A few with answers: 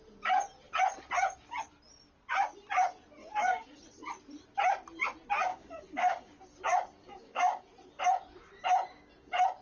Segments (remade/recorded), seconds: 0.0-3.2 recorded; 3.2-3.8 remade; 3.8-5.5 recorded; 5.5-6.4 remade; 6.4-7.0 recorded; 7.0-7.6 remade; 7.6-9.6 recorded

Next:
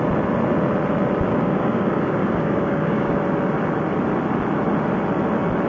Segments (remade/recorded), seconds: 0.0-1.3 recorded; 1.3-3.2 remade; 3.2-5.7 recorded